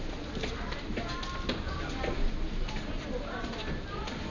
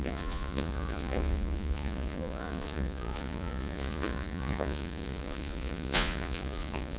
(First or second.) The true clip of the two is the first